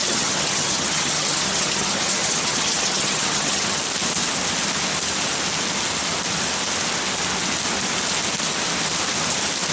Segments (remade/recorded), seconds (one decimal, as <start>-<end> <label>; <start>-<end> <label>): 0.0-3.8 remade; 3.8-9.7 recorded